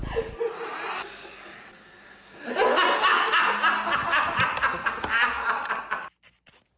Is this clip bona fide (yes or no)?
yes